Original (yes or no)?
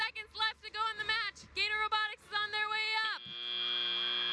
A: yes